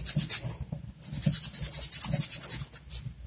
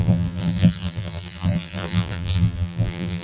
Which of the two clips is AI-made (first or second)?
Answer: second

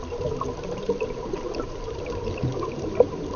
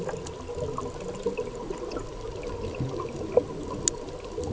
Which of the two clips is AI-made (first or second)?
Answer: first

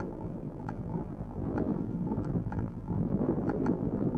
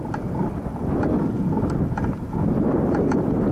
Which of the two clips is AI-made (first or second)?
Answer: first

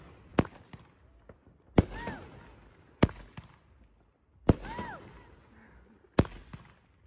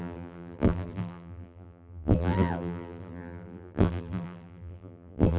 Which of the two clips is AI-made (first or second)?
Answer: second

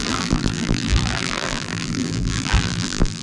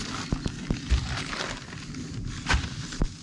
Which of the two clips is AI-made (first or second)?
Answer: first